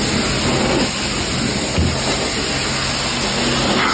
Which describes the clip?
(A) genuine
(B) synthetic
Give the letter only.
A